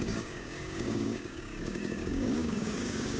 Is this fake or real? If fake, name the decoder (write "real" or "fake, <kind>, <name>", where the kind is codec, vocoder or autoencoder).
fake, codec, DAC